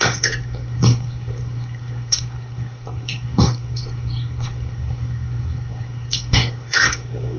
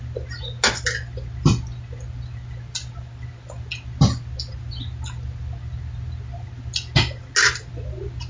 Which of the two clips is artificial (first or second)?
first